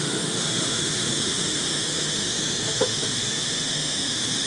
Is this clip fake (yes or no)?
yes